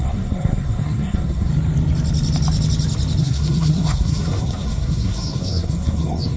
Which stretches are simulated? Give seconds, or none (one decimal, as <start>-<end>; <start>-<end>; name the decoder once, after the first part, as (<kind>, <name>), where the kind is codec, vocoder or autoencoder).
0.0-1.5 (codec, SNAC); 3.2-6.4